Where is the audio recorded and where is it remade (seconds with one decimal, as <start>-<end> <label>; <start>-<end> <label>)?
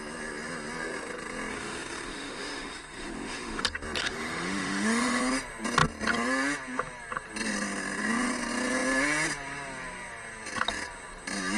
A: 0.0-1.5 recorded; 1.5-3.6 remade; 3.6-4.0 recorded; 4.0-5.2 remade; 5.2-11.6 recorded